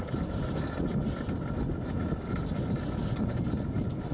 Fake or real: real